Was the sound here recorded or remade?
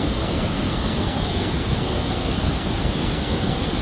remade